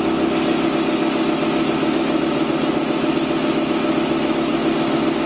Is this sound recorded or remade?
recorded